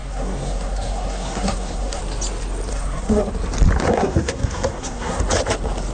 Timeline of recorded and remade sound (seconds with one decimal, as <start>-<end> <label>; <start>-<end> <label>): 0.0-2.0 remade; 2.0-2.7 recorded; 2.7-3.3 remade; 3.3-3.9 recorded; 3.9-5.2 remade; 5.2-5.9 recorded